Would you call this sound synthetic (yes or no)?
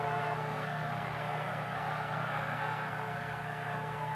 yes